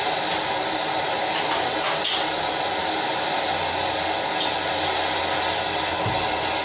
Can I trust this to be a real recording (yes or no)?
yes